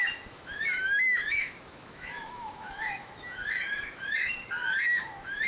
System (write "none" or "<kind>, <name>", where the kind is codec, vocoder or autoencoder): autoencoder, DAC-VAE